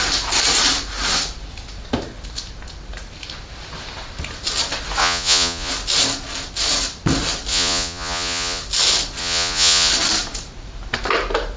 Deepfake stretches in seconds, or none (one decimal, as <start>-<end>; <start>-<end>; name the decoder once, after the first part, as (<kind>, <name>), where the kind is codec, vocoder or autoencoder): 5.0-5.7 (vocoder, Vocos); 7.5-8.6; 9.2-9.9

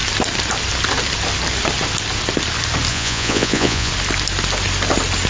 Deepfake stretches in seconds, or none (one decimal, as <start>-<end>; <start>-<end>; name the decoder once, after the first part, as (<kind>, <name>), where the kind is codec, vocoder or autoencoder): 2.9-3.9 (vocoder, Vocos)

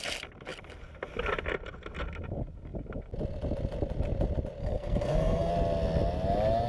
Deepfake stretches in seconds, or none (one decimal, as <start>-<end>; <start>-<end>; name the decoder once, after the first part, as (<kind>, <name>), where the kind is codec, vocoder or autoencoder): 4.6-5.5 (codec, SNAC)

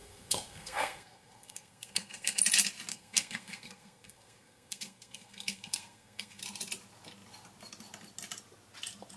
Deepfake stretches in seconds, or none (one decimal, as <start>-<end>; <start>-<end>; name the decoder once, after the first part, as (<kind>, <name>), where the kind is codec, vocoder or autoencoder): 0.0-2.4 (codec, SNAC); 2.9-6.4

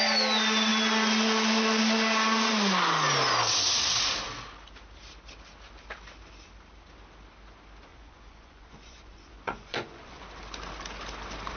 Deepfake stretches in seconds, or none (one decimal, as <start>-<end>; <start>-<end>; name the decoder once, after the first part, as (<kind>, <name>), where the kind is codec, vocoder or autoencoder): 7.9-10.2 (vocoder, Vocos)

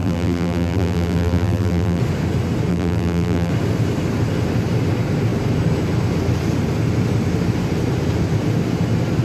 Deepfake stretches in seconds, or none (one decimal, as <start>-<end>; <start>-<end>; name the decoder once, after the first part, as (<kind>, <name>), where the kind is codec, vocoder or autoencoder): 0.0-2.0 (vocoder, BigVGAN v2); 2.7-3.5